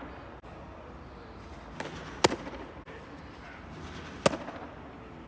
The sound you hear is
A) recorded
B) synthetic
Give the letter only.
A